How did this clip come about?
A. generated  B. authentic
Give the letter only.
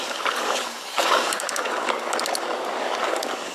A